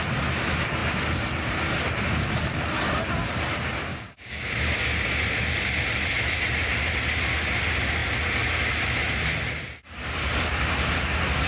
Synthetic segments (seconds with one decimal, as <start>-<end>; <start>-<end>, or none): 3.9-5.1